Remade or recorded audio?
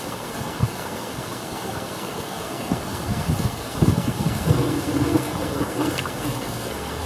remade